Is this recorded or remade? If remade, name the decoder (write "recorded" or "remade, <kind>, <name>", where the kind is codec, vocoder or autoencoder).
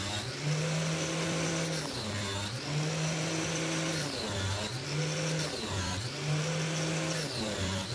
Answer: recorded